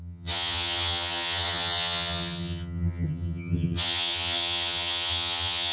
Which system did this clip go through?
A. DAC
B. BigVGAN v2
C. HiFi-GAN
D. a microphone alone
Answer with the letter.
C